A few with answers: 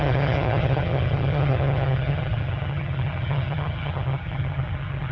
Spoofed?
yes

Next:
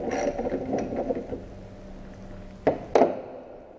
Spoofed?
no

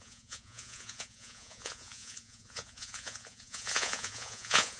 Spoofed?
yes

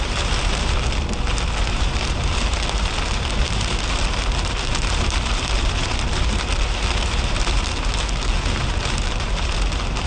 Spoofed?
no